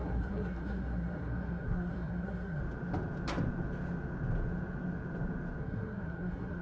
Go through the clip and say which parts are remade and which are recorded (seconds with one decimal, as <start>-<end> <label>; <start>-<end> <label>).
0.0-2.6 remade; 2.6-5.6 recorded; 5.6-6.6 remade